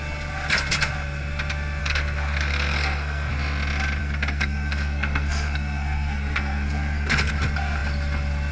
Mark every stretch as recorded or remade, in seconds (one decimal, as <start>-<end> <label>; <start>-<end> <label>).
0.0-1.8 recorded; 1.8-3.3 remade; 3.3-4.0 recorded; 4.0-7.3 remade; 7.3-8.5 recorded